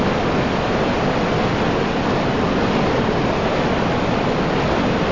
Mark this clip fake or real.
real